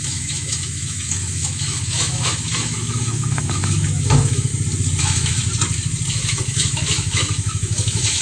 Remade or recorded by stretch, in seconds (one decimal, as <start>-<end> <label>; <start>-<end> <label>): 0.0-4.5 remade; 4.5-5.0 recorded; 5.0-5.4 remade; 5.4-6.1 recorded; 6.1-8.2 remade